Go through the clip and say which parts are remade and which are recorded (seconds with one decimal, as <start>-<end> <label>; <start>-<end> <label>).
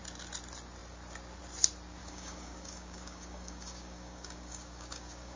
0.0-2.0 recorded; 2.0-5.4 remade